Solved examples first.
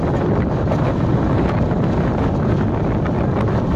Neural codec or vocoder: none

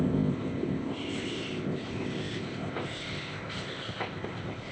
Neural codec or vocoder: codec, ZipCodec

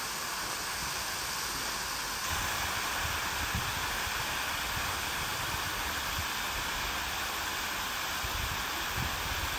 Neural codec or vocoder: none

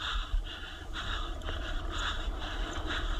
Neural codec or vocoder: vocoder, BigVGAN v2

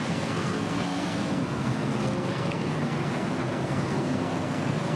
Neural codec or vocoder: codec, SNAC